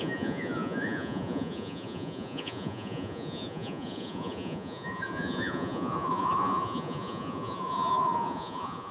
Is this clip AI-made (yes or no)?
yes